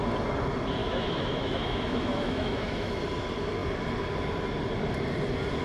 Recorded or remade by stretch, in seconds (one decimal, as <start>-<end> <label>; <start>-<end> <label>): 0.0-0.8 recorded; 0.8-3.0 remade; 3.0-5.6 recorded